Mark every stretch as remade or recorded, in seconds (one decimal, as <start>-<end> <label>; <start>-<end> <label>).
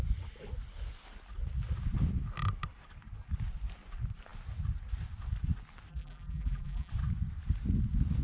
0.0-5.9 recorded; 5.9-6.9 remade; 6.9-8.2 recorded